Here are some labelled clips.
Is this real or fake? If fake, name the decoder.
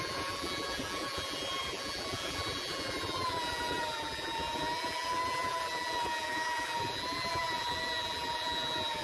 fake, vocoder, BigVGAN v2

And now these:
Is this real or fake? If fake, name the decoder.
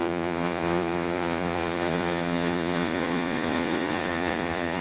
fake, vocoder, Vocos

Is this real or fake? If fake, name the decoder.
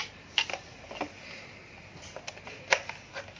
real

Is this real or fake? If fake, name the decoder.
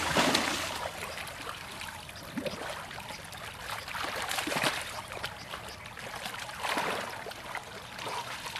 real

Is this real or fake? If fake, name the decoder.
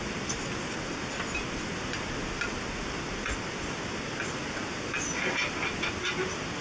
real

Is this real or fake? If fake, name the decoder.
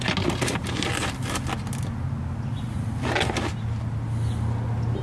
real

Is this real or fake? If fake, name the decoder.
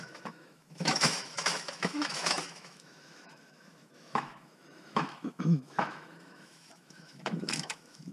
fake, autoencoder, DAC-VAE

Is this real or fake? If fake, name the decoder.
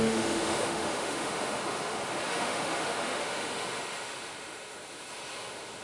fake, autoencoder, DAC-VAE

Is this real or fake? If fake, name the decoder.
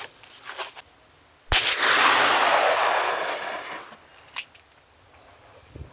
real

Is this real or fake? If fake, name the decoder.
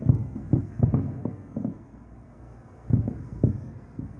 fake, codec, SNAC